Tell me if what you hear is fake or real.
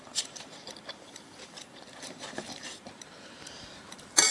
fake